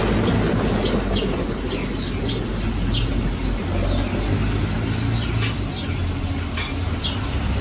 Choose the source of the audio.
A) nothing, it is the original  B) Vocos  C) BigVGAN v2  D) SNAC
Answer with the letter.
A